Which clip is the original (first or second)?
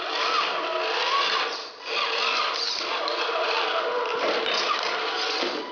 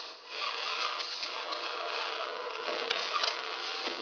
first